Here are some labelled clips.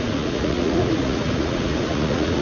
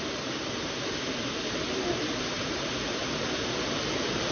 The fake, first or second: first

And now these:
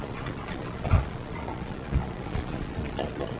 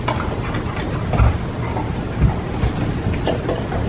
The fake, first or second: first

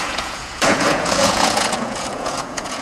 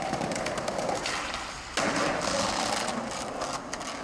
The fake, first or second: first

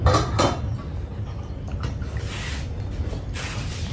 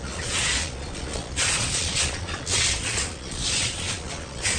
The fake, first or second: second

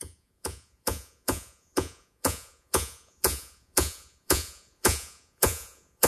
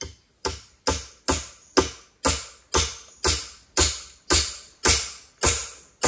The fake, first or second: first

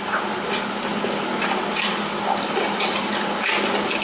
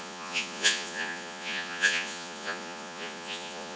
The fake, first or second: second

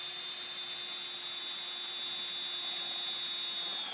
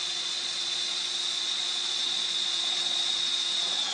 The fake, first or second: second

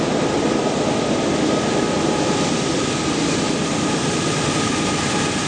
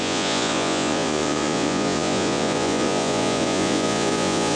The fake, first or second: second